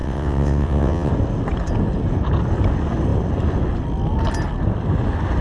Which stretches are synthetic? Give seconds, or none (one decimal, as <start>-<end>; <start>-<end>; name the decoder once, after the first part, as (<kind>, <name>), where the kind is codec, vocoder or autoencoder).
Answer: 0.0-1.1 (vocoder, WaveNeXt)